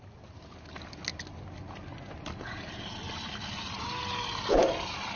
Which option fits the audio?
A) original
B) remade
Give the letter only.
A